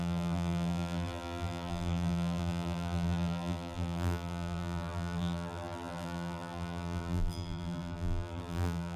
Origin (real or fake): fake